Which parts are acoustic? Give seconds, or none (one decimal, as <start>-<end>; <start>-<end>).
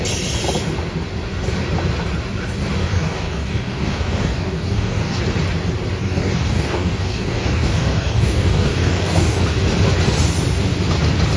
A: 0.0-2.8; 5.2-6.0; 9.4-11.4